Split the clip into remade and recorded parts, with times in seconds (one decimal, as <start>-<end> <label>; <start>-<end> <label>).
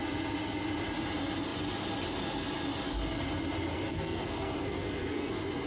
0.0-3.7 recorded; 3.7-5.3 remade; 5.3-5.7 recorded